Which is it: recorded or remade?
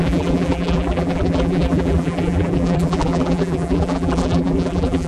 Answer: remade